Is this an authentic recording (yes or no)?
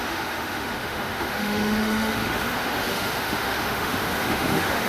no